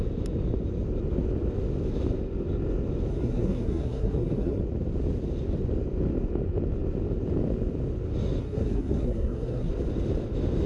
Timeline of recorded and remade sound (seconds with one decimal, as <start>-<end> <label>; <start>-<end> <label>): 0.0-3.1 recorded; 3.1-4.6 remade; 4.6-8.4 recorded; 8.4-9.7 remade; 9.7-10.7 recorded